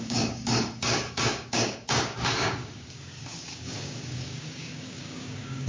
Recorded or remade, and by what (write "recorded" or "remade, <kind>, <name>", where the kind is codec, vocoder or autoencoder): remade, codec, DAC